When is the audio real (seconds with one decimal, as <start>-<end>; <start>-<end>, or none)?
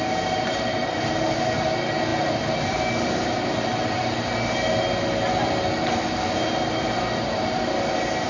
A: 0.0-8.3